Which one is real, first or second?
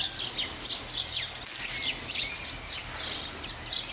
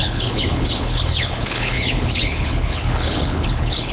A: first